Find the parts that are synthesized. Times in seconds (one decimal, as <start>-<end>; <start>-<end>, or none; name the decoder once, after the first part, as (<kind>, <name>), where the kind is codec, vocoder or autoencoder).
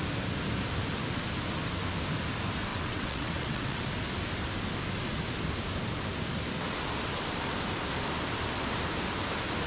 2.7-3.8 (vocoder, WaveNeXt)